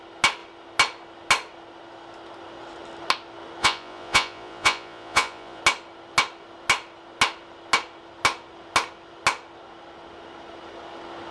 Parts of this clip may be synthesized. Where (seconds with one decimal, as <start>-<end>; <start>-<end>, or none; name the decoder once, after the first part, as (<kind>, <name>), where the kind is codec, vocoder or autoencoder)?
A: 3.6-5.6 (vocoder, Vocos)